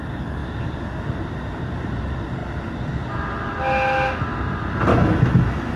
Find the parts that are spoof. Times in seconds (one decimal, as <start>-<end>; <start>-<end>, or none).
4.9-5.8